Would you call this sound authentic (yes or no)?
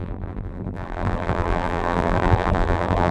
no